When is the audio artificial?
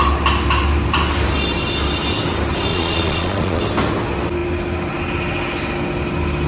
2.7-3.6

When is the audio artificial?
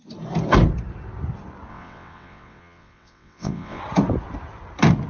1.7-3.8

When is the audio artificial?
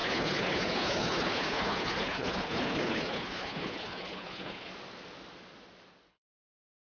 0.0-4.7; 6.1-6.9